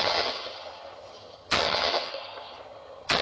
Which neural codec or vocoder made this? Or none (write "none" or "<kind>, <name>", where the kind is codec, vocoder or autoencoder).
vocoder, HiFi-GAN